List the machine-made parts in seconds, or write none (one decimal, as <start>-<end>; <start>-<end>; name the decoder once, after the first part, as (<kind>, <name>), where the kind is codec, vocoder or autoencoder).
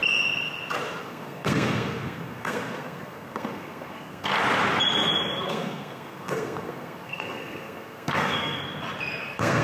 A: 1.0-4.3 (codec, SNAC); 5.5-8.6; 9.2-9.6